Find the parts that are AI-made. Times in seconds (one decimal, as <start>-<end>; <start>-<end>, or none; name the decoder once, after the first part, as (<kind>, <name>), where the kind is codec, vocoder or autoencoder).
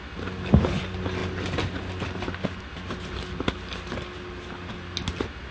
none